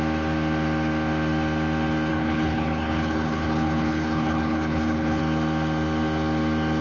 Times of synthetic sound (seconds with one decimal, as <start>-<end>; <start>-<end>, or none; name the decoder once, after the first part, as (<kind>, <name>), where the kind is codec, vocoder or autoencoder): 2.1-5.2 (codec, HILCodec)